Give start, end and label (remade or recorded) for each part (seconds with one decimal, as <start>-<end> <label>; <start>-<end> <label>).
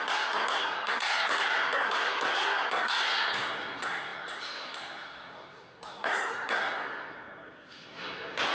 0.0-8.5 remade